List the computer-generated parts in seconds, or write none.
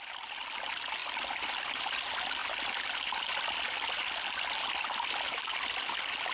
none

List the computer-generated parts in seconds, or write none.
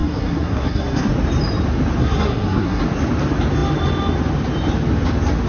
0.0-1.1 (codec, SNAC); 2.0-2.8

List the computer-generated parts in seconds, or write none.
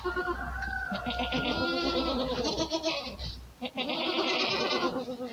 none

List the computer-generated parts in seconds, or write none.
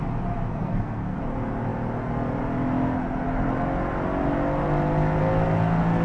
0.5-1.2 (codec, SNAC)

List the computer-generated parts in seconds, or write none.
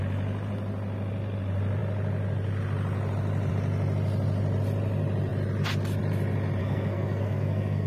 6.6-7.9 (codec, SNAC)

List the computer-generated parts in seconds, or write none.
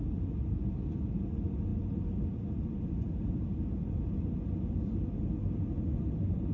none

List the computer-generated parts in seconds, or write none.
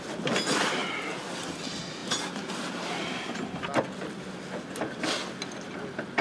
none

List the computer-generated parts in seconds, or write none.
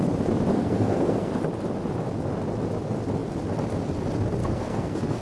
0.5-1.3 (codec, SNAC); 4.4-5.2